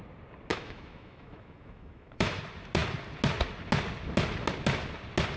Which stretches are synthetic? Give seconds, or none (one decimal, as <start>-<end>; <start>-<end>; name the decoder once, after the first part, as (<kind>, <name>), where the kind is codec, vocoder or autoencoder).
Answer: 0.5-2.4 (autoencoder, DAC-VAE)

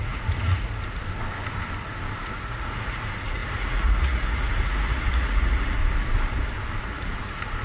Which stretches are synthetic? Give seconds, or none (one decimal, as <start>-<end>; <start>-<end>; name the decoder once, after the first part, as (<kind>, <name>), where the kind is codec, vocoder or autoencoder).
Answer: 0.0-1.0 (vocoder, Vocos); 2.2-5.8; 6.8-7.6

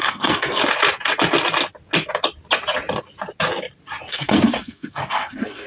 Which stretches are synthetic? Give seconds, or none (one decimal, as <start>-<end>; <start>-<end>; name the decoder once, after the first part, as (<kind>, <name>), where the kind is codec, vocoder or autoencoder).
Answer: 0.0-0.6 (codec, SNAC); 4.0-5.7

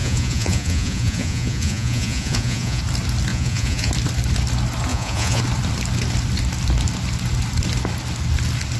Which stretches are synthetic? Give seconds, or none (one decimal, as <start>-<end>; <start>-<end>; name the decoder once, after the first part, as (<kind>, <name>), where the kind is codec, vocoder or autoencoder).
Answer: 0.0-2.8 (vocoder, Vocos); 3.3-3.9; 4.9-5.4